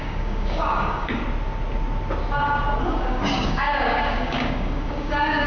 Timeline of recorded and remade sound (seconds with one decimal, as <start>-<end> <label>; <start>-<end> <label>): 0.0-1.2 remade; 1.2-2.8 recorded; 2.8-5.5 remade